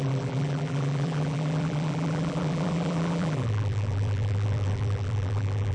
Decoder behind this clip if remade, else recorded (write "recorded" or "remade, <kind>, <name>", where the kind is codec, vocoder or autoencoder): remade, vocoder, BigVGAN v2